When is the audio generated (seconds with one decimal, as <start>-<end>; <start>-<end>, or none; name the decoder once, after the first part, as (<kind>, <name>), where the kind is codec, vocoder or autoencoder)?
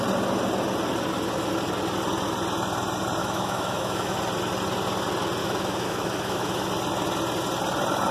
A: 3.2-4.2 (autoencoder, DAC-VAE); 5.4-6.7